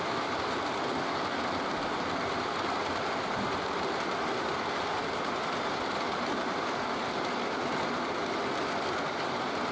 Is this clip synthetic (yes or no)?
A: no